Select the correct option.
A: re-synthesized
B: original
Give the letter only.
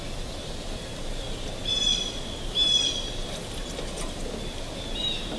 B